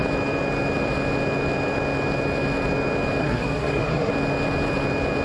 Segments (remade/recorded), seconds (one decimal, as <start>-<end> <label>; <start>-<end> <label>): 0.0-3.2 recorded; 3.2-4.1 remade; 4.1-5.2 recorded